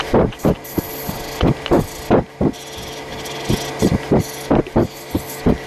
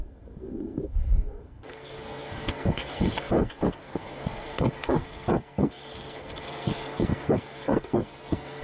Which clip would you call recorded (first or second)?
first